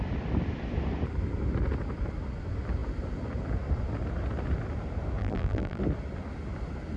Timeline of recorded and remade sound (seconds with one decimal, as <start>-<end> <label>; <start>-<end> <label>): 0.0-5.2 recorded; 5.2-5.8 remade; 5.8-7.0 recorded